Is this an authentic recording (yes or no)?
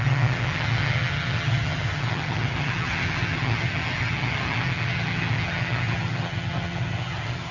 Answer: no